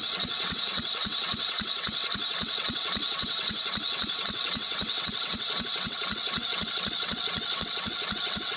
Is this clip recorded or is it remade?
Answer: remade